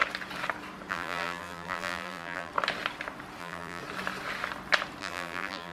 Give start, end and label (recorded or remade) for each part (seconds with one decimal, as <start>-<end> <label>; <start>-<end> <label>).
0.0-0.9 recorded; 0.9-2.5 remade; 2.5-3.4 recorded; 3.4-3.8 remade; 3.8-5.0 recorded; 5.0-5.7 remade